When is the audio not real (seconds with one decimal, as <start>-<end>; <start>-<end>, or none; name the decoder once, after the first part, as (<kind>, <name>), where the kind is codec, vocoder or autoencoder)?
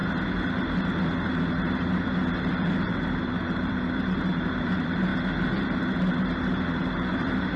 1.6-2.1 (vocoder, BigVGAN v2); 3.2-5.1; 6.8-7.6